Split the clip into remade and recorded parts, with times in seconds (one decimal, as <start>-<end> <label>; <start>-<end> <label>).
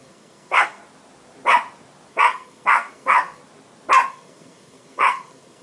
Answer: 0.0-0.8 remade; 0.8-2.1 recorded; 2.1-3.4 remade; 3.4-4.1 recorded; 4.1-5.6 remade